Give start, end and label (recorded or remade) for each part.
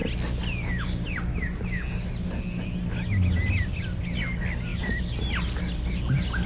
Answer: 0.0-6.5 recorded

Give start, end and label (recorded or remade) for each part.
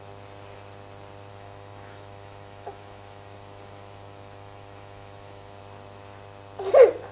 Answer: 0.0-1.3 recorded; 1.3-5.6 remade; 5.6-7.1 recorded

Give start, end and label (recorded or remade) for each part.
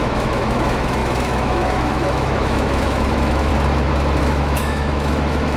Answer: 0.0-3.5 remade; 3.5-4.2 recorded; 4.2-5.6 remade